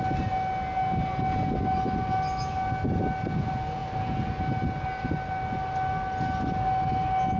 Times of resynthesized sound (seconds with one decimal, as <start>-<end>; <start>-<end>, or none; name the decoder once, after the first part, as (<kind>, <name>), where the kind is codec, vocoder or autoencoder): none

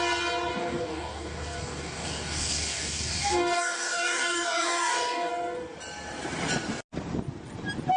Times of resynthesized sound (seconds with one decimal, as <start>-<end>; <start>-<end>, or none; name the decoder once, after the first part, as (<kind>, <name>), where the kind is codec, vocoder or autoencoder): 0.5-5.3 (codec, DAC)

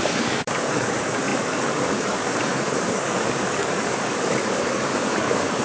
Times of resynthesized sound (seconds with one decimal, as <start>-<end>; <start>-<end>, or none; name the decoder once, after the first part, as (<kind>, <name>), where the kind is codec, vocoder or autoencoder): 0.0-5.6 (codec, DAC)